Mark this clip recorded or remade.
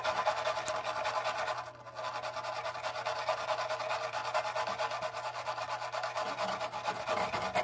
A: recorded